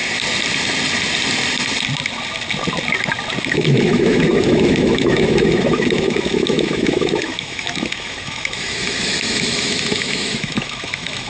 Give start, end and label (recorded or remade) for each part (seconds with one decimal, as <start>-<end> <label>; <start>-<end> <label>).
0.0-3.4 recorded; 3.4-11.3 remade